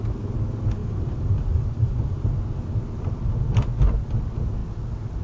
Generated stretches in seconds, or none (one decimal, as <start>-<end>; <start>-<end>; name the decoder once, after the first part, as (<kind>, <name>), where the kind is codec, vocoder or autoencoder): 0.8-2.2 (vocoder, BigVGAN v2)